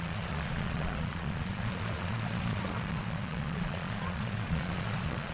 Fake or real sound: fake